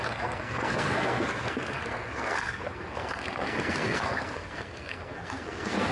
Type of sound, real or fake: fake